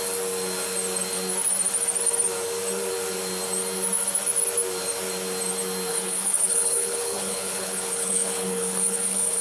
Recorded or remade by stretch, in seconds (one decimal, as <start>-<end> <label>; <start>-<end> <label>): 0.0-5.9 recorded; 5.9-9.4 remade